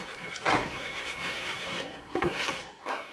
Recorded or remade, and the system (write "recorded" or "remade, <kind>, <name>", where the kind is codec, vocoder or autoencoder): remade, codec, SNAC